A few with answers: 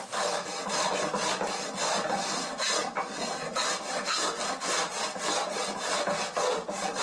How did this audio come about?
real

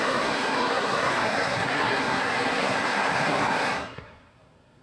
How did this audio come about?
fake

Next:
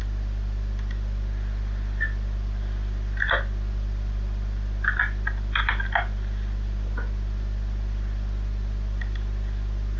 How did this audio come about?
real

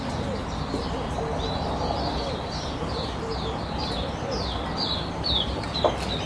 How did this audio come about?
real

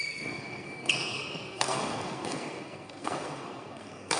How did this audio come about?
fake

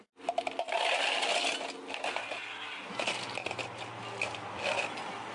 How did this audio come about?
real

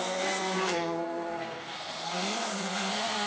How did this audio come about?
fake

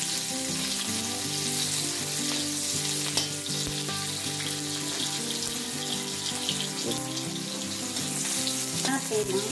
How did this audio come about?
real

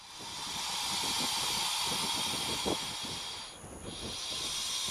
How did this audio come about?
real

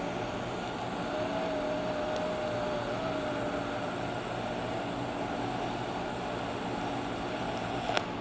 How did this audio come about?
real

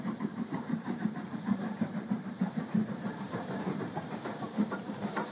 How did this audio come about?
fake